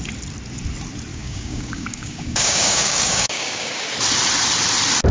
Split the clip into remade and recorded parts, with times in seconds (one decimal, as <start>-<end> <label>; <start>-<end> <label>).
0.0-1.1 recorded; 1.1-3.8 remade; 3.8-5.1 recorded